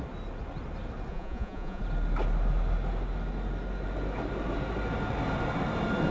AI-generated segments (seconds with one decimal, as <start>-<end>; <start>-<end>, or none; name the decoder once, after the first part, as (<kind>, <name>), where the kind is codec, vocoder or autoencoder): 1.1-1.8 (vocoder, Vocos)